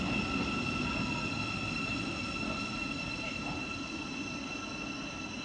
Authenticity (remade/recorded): recorded